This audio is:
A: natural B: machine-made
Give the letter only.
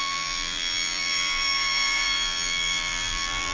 B